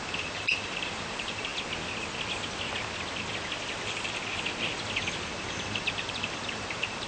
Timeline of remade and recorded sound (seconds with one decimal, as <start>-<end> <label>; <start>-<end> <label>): 0.0-1.5 remade; 1.5-5.3 recorded; 5.3-7.1 remade